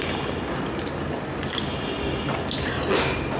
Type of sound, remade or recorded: recorded